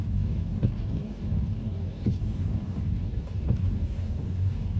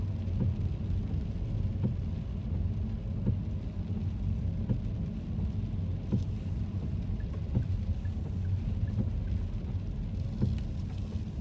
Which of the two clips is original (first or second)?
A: second